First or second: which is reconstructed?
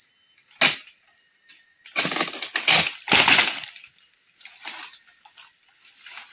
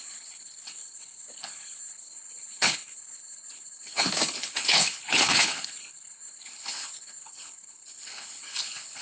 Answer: second